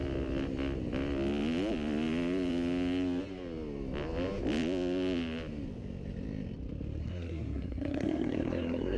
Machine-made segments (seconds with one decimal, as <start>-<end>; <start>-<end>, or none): 7.0-9.0